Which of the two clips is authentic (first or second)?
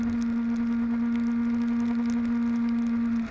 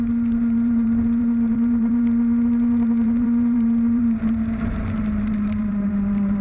first